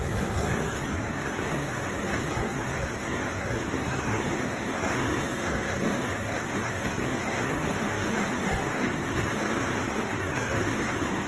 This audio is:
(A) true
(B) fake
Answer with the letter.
B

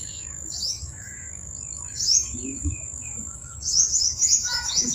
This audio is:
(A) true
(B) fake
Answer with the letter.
B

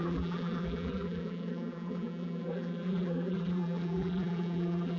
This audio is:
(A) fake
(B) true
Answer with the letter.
A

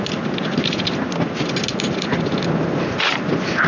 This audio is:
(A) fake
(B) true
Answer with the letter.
B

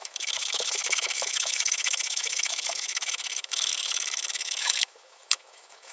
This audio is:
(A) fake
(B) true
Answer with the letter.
A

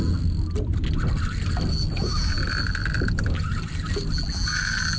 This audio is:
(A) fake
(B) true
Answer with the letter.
B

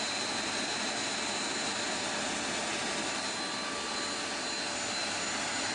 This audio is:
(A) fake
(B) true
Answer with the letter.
B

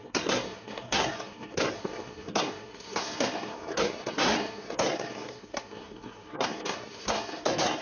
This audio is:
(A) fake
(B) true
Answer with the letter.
A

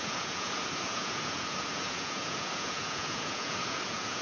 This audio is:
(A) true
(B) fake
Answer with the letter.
B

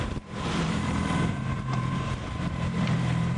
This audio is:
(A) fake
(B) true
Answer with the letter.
A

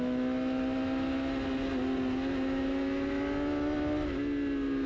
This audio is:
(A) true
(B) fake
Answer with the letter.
A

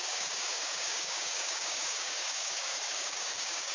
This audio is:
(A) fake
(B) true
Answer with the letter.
A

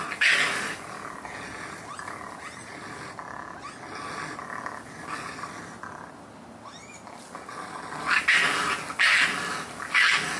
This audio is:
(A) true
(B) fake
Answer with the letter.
A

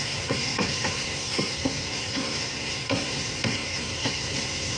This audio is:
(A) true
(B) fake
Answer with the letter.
B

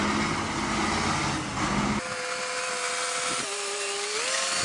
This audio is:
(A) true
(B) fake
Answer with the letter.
A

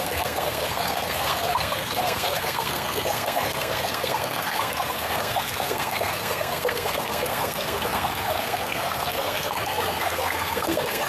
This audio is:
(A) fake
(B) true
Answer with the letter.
A